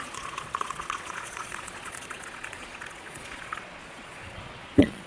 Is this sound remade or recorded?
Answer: remade